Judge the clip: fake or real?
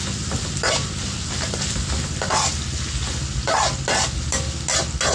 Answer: real